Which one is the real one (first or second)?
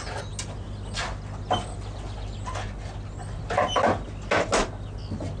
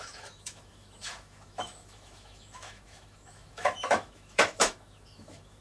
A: first